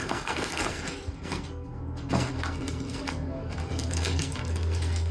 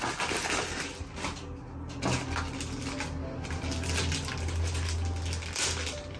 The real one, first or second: second